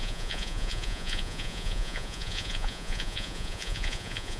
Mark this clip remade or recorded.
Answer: remade